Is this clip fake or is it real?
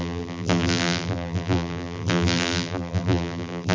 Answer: fake